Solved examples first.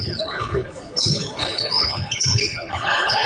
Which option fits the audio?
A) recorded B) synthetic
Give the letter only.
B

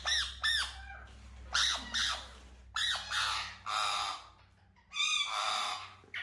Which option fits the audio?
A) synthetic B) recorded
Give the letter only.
B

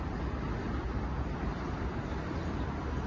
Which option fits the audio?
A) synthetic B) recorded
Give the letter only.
B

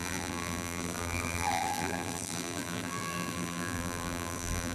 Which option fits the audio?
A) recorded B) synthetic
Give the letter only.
B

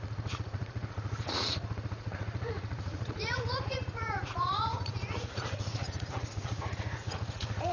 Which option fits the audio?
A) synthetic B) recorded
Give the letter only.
A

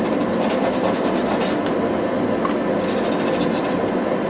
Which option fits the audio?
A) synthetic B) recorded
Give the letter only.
B